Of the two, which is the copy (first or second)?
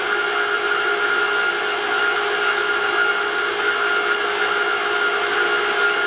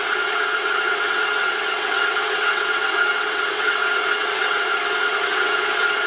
second